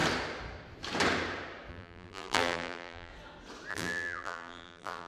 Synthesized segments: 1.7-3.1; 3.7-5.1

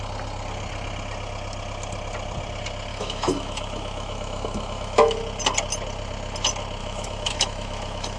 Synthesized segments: 2.9-5.2; 6.8-8.2

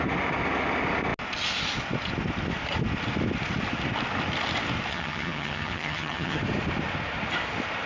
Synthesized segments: 4.9-6.4

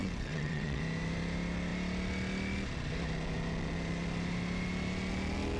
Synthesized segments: 0.0-0.8

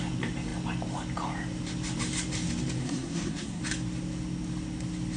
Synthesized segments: 2.8-3.6